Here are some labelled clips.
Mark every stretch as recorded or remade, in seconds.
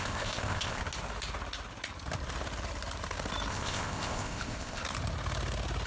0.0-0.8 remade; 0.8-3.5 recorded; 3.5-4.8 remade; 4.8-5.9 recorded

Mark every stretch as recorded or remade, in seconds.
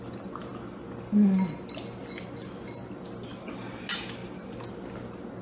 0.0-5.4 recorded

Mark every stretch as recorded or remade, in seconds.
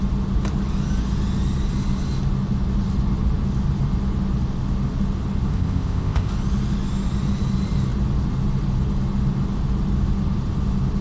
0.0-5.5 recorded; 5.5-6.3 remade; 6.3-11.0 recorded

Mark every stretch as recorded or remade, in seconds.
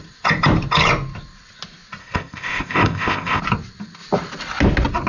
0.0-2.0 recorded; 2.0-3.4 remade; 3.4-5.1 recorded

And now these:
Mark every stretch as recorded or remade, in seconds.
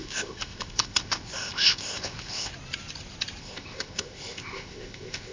0.0-2.5 remade; 2.5-3.4 recorded; 3.4-5.3 remade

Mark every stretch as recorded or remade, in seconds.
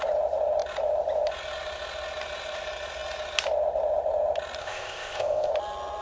0.0-4.6 recorded; 4.6-5.5 remade; 5.5-6.0 recorded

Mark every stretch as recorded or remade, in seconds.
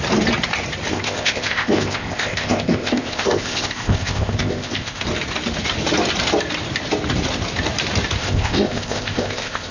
0.0-0.9 recorded; 0.9-5.0 remade; 5.0-8.2 recorded; 8.2-9.7 remade